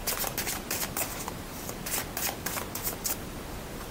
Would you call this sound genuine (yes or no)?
yes